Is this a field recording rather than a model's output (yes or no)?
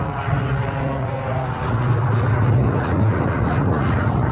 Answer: no